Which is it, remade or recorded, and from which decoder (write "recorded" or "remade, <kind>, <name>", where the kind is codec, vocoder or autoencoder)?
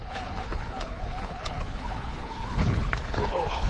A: remade, codec, HILCodec